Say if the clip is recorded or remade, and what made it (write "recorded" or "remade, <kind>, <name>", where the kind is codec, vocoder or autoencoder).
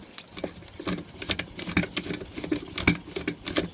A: recorded